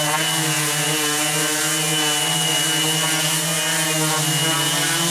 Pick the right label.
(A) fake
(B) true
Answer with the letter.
B